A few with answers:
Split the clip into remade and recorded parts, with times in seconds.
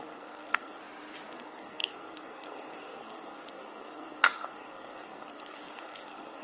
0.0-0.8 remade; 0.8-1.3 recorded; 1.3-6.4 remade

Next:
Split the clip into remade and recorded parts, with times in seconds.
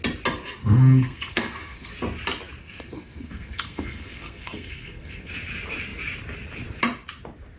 0.0-0.6 recorded; 0.6-1.9 remade; 1.9-2.6 recorded; 2.6-5.3 remade; 5.3-7.6 recorded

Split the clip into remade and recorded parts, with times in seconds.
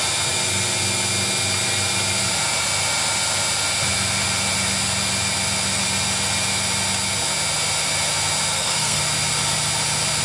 0.0-8.5 recorded; 8.5-9.0 remade; 9.0-10.2 recorded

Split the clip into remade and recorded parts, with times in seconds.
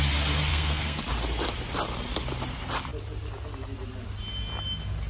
0.0-0.5 recorded; 0.5-1.0 remade; 1.0-5.1 recorded